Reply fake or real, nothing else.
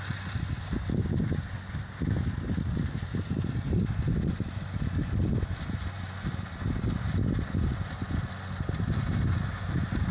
real